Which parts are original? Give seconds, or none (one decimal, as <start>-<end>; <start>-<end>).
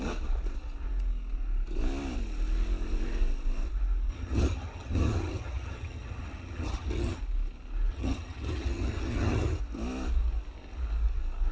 0.0-4.1; 7.2-7.9; 9.6-11.5